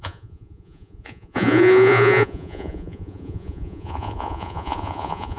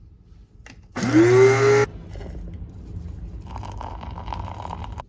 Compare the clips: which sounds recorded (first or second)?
second